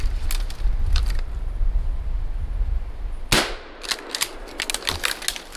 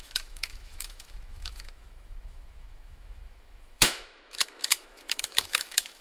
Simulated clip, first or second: second